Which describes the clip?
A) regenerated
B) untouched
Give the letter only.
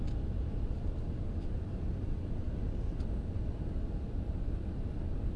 A